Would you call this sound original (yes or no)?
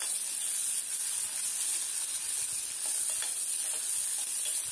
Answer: yes